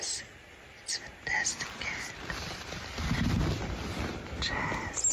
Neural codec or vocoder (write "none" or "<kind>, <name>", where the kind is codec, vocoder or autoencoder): none